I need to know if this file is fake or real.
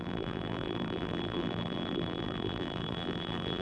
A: fake